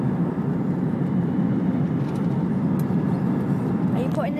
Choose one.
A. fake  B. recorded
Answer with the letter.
B